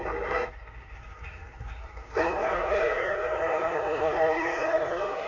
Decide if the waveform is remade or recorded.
remade